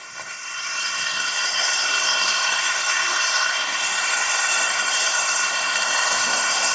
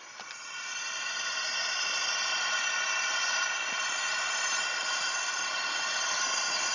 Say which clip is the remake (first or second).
first